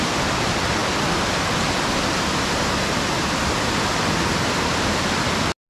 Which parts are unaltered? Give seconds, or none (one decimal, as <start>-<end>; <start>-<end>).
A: 0.0-5.7